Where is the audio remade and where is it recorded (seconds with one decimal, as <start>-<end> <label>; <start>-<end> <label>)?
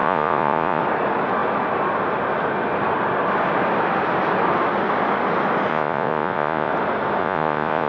0.0-0.8 remade; 0.8-5.7 recorded; 5.7-6.7 remade; 6.7-7.2 recorded; 7.2-7.9 remade